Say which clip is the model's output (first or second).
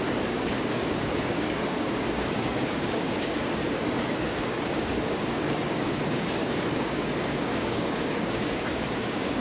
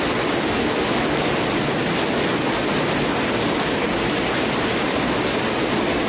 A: first